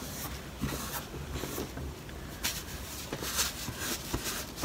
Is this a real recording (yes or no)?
yes